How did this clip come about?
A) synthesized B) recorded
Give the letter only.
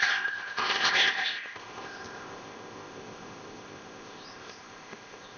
A